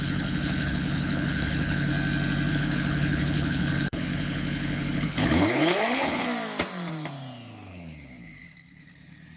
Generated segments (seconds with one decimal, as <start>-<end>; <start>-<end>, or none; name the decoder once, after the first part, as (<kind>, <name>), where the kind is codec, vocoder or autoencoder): 0.0-1.9 (codec, HILCodec); 2.5-6.2; 7.7-9.4